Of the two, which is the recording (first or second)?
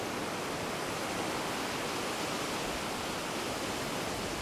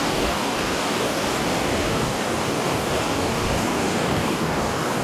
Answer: first